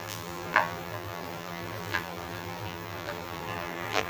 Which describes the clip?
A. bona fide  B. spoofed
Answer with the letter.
B